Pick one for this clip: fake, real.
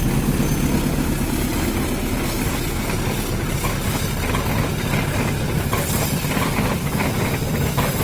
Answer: real